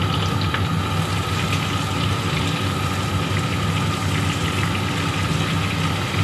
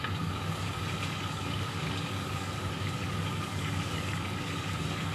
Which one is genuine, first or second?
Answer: first